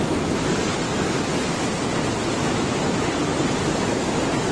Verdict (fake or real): real